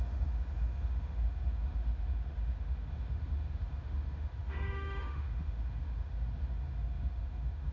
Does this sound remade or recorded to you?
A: remade